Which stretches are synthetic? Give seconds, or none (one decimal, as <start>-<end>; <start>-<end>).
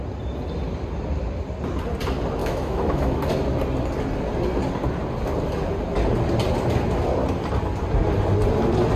2.4-3.3